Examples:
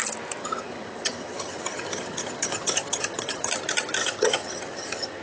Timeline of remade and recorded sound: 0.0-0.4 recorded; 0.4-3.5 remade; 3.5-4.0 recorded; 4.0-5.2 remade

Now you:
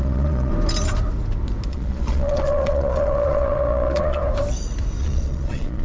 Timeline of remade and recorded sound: 0.0-0.5 remade; 0.5-1.7 recorded; 1.7-4.2 remade; 4.2-5.0 recorded; 5.0-5.8 remade